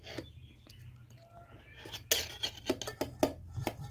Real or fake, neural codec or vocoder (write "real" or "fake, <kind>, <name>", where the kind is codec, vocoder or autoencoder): real